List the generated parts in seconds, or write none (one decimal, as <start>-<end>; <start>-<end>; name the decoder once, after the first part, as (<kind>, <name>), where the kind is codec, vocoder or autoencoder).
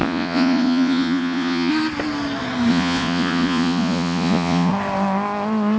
0.0-1.7 (vocoder, Vocos); 2.7-4.7